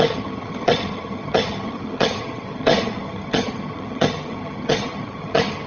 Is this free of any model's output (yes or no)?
no